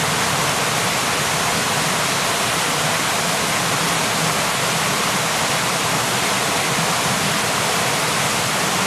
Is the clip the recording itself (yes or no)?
yes